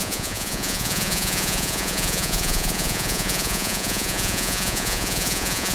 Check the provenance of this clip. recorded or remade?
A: remade